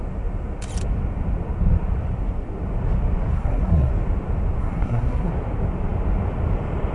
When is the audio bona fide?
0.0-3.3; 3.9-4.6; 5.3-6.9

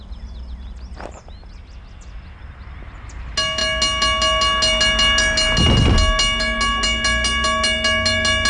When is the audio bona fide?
0.0-8.5